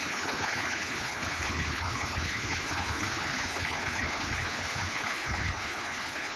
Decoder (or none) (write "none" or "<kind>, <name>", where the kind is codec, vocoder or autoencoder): codec, HILCodec